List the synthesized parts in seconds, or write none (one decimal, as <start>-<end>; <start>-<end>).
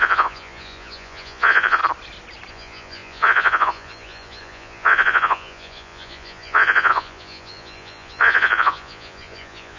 0.0-1.8; 2.5-9.8